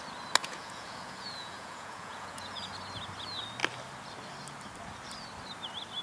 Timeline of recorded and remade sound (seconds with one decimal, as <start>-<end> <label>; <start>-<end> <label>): 0.0-0.4 recorded; 0.4-2.7 remade; 2.7-6.0 recorded